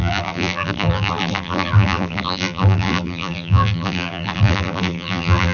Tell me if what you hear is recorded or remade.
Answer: remade